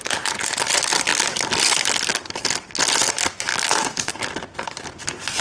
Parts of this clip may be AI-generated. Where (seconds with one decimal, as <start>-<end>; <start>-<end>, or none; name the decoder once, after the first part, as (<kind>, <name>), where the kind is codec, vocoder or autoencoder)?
3.5-4.1 (codec, DAC)